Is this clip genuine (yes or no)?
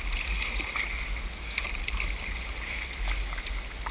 yes